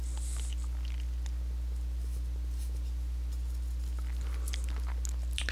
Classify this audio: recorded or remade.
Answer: recorded